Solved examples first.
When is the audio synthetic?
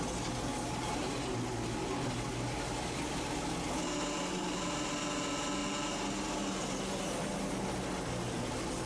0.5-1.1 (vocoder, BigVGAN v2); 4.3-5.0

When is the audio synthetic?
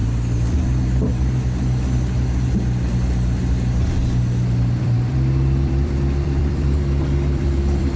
4.8-8.0 (vocoder, BigVGAN v2)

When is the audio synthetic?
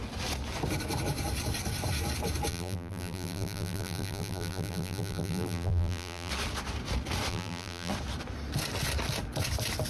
2.5-6.3 (vocoder, BigVGAN v2); 7.3-7.9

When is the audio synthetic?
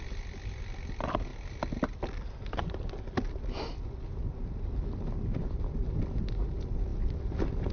none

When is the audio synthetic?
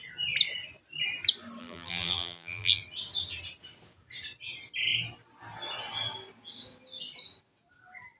1.6-2.8 (vocoder, BigVGAN v2)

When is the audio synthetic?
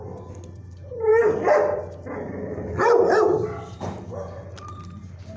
none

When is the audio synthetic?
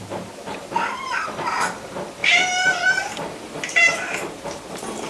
2.2-5.1 (vocoder, BigVGAN v2)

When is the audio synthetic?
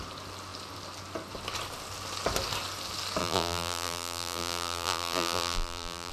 3.2-6.1 (vocoder, BigVGAN v2)